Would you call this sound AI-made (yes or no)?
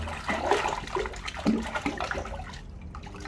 no